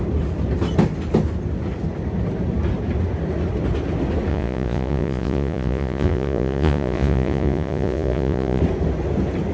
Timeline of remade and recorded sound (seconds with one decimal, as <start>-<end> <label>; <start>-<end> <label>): 0.0-4.3 recorded; 4.3-8.6 remade; 8.6-9.5 recorded